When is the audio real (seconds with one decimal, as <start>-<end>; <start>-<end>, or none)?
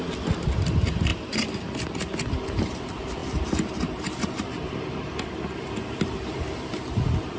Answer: none